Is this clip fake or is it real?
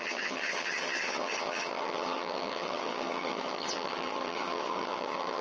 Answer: fake